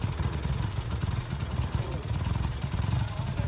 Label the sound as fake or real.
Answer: fake